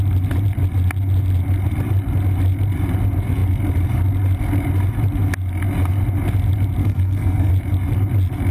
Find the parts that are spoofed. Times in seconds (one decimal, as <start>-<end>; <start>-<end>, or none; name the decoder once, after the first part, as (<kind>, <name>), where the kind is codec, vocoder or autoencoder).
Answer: 6.8-7.5 (codec, SNAC)